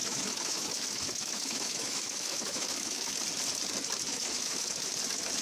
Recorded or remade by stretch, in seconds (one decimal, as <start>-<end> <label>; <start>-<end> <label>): 0.0-3.1 remade; 3.1-4.1 recorded; 4.1-4.9 remade; 4.9-5.4 recorded